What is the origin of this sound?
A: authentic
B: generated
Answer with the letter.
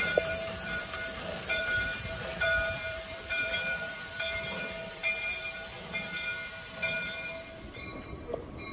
B